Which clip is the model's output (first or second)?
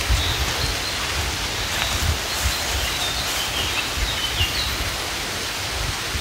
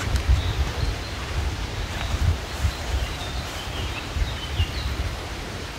second